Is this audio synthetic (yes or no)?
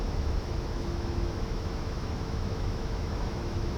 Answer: yes